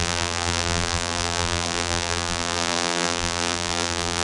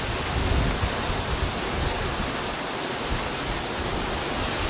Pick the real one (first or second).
second